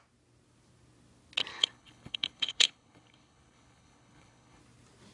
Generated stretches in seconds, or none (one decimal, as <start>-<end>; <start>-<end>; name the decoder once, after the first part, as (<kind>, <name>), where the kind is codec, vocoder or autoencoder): 1.5-4.6 (codec, HILCodec)